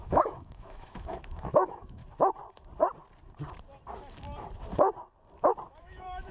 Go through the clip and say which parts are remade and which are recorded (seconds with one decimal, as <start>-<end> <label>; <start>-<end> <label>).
0.0-2.0 remade; 2.0-5.8 recorded; 5.8-6.3 remade